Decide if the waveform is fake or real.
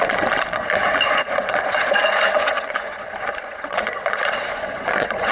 fake